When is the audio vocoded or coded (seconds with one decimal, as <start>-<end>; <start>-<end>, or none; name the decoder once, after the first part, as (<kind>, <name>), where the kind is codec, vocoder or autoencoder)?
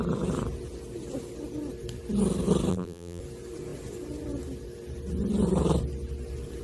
2.7-3.2 (vocoder, BigVGAN v2)